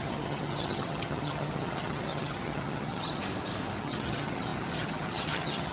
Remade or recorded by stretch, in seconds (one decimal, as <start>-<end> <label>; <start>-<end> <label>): 0.0-3.2 remade; 3.2-3.8 recorded; 3.8-5.7 remade